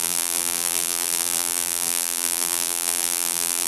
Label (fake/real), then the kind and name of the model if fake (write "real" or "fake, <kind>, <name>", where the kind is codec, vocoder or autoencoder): fake, vocoder, BigVGAN v2